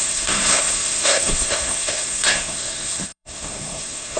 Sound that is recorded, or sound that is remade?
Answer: remade